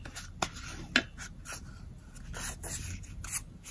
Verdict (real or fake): real